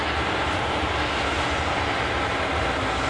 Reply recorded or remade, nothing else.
recorded